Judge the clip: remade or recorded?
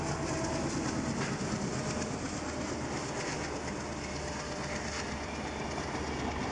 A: recorded